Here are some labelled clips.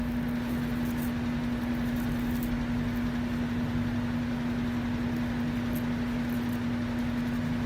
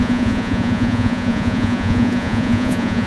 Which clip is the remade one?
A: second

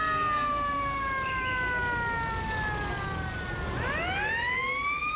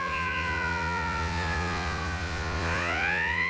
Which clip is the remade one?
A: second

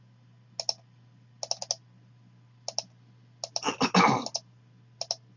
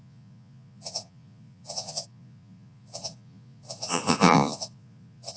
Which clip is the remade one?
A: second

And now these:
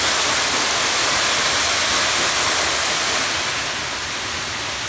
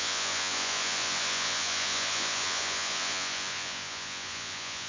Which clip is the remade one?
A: second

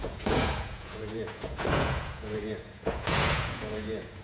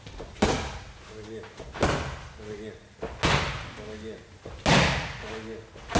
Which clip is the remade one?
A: first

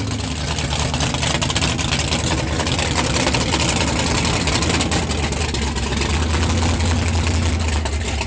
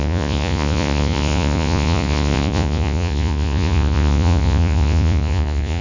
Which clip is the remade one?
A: second